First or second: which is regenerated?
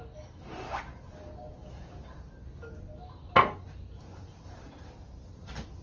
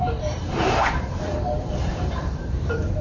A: second